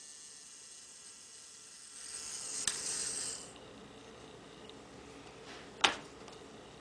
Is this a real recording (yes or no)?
yes